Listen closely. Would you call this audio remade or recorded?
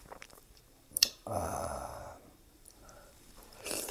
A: remade